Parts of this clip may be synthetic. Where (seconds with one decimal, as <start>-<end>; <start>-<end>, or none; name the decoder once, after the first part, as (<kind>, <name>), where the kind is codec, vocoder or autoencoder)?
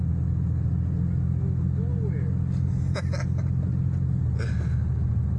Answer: none